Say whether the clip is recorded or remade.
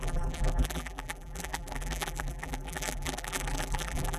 remade